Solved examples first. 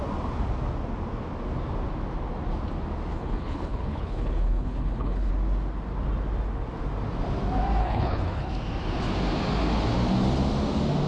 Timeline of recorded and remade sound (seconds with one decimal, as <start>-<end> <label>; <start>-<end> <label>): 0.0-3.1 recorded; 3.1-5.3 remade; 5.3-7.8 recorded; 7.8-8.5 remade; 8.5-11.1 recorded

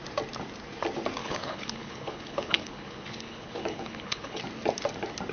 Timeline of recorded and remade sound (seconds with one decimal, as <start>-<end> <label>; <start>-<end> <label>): 0.0-1.2 recorded; 1.2-4.4 remade; 4.4-5.3 recorded

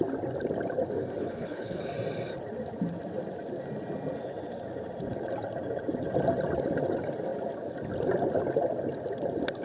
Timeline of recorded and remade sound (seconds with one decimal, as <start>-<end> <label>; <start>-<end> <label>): 0.0-1.2 recorded; 1.2-1.8 remade; 1.8-9.6 recorded

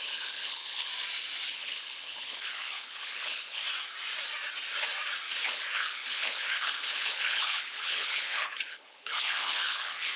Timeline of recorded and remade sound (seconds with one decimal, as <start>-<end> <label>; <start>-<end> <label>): 0.0-0.9 remade; 0.9-1.5 recorded; 1.5-3.6 remade; 3.6-5.4 recorded; 5.4-10.2 remade

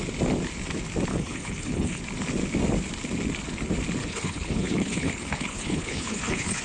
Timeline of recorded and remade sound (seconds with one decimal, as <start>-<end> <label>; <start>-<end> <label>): 0.0-1.1 recorded; 1.1-2.0 remade; 2.0-4.0 recorded; 4.0-6.6 remade

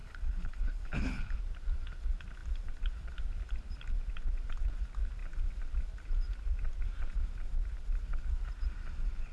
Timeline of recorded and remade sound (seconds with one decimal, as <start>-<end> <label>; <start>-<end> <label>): 0.0-1.3 remade; 1.3-9.3 recorded